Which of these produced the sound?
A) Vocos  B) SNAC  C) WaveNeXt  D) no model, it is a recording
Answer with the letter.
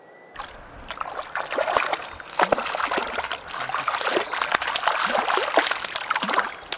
D